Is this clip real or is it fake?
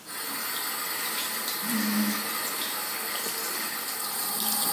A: real